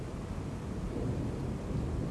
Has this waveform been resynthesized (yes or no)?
no